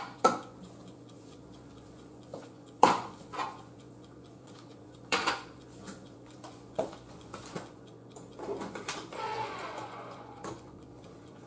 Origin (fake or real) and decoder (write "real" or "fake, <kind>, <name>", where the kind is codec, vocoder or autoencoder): fake, vocoder, Vocos